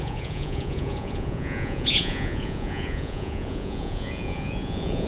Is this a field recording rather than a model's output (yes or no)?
no